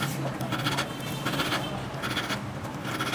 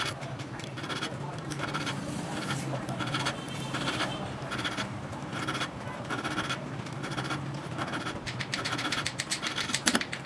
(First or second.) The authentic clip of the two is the first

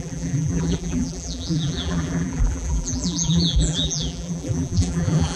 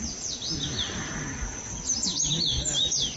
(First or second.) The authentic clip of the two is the second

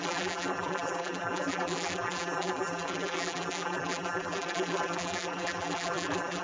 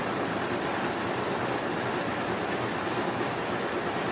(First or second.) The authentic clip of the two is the second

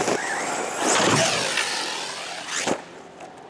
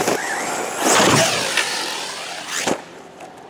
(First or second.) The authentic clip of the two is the first